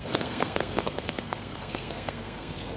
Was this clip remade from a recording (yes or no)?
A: yes